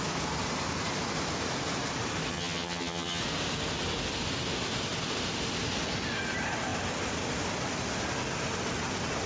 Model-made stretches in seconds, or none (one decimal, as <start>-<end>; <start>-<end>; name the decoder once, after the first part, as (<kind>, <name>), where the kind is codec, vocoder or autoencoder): 2.3-3.2 (vocoder, HiFi-GAN)